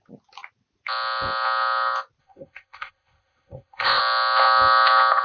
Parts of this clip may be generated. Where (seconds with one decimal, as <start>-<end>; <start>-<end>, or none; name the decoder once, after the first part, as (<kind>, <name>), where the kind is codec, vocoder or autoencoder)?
2.2-4.0 (codec, ZipCodec)